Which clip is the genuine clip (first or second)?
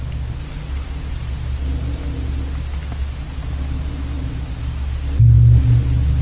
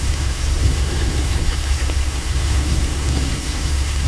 first